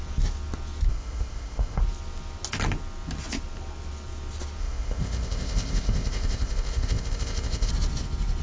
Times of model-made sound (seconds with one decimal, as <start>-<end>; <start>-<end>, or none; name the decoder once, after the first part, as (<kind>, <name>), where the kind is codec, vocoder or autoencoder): 0.9-1.8 (codec, ZipCodec); 4.6-7.7